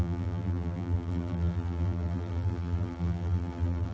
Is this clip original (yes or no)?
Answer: no